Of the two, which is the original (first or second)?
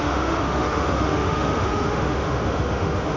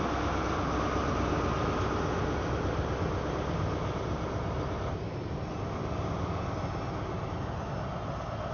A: second